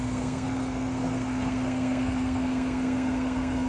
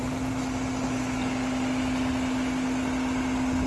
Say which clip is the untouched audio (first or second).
second